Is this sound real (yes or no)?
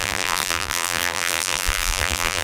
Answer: no